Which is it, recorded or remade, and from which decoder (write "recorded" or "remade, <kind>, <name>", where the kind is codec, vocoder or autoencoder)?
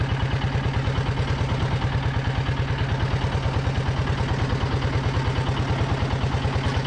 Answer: recorded